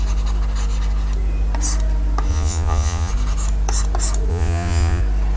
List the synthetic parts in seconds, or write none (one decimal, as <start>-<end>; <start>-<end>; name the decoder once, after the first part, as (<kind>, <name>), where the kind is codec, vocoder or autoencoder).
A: 2.3-3.1 (vocoder, Vocos); 4.3-5.0